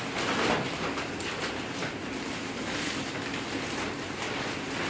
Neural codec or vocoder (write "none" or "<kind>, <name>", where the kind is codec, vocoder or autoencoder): none